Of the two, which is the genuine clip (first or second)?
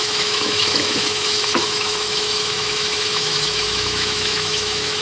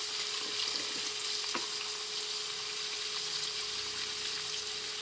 second